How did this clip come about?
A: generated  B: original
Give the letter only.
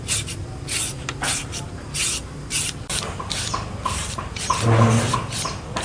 B